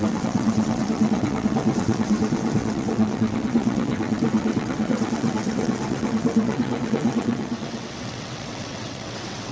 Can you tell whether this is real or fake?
fake